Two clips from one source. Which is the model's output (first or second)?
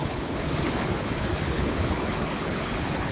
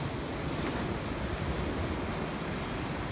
first